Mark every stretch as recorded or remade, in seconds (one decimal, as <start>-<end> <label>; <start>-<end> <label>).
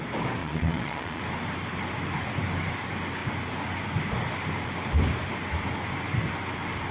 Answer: 0.0-0.4 recorded; 0.4-1.2 remade; 1.2-6.9 recorded